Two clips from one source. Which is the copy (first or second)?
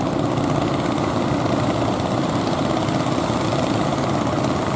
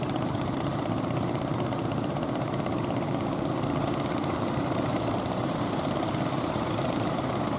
second